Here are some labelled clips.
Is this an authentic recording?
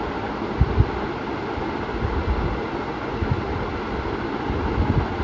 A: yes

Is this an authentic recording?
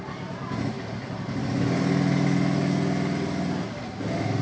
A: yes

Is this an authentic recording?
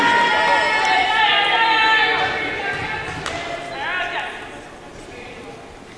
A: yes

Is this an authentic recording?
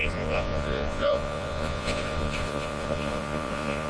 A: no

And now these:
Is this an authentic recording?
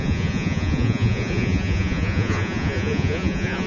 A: no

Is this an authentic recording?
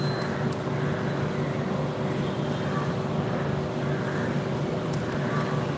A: yes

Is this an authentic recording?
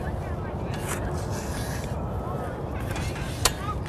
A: yes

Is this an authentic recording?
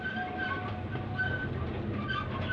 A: yes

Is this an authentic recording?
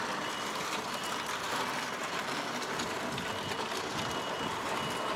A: yes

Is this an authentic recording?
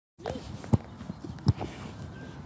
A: yes